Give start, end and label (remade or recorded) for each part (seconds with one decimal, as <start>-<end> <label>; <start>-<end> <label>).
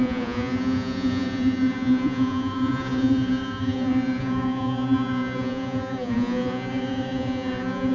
0.0-7.9 remade